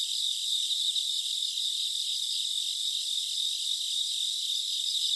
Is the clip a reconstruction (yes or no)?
no